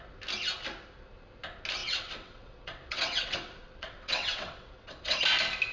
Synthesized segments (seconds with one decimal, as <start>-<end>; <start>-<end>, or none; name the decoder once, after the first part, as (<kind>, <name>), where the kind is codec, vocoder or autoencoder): 1.8-5.2 (vocoder, WaveNeXt)